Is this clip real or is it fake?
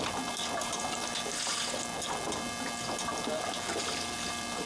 real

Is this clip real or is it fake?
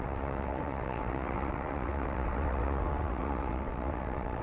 fake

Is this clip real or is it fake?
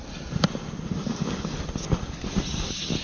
real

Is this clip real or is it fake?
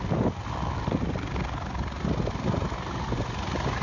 real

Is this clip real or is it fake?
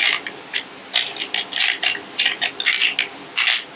real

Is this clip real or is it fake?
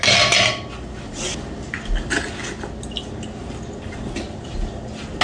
real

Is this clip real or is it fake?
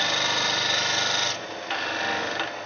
real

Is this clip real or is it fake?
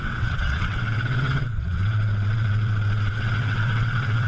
fake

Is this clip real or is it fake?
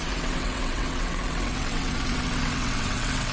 fake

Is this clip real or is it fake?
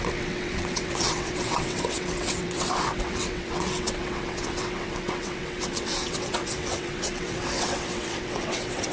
fake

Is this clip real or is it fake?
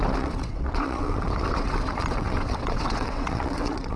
fake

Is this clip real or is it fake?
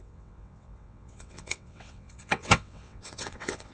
fake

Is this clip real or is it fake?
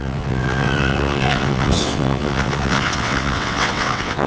fake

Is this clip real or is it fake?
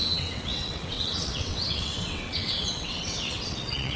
fake